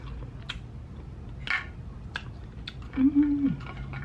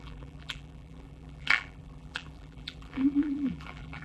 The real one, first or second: first